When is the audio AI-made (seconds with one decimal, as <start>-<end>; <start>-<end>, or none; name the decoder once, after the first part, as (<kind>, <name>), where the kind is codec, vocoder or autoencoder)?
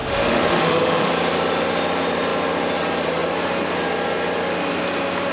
0.0-1.1 (autoencoder, DAC-VAE)